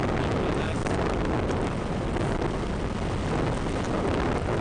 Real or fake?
real